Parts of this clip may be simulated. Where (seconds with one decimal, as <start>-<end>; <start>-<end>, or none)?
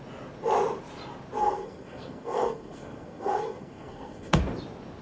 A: 1.4-4.4